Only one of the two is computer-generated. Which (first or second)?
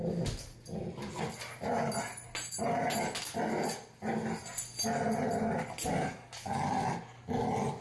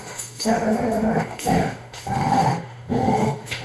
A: second